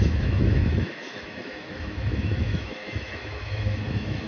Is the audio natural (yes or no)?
no